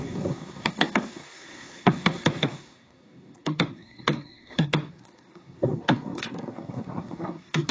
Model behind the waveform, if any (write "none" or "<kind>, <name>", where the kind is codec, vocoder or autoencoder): codec, SNAC